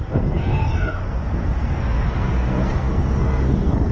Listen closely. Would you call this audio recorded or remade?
remade